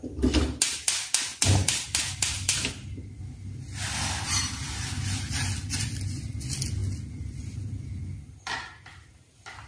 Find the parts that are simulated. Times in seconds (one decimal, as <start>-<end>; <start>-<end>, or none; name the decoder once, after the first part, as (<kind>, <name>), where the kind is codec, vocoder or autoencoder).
none